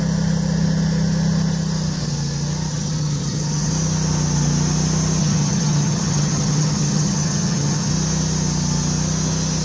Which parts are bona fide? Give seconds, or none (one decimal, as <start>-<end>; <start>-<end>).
0.0-2.7; 3.7-5.2; 7.9-9.6